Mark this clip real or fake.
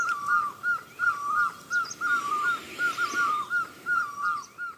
real